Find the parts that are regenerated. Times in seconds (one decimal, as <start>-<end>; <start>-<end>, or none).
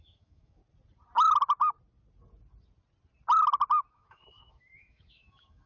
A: 0.0-0.6; 3.9-5.7